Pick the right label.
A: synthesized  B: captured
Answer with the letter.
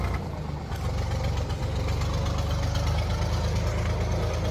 B